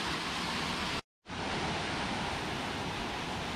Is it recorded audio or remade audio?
recorded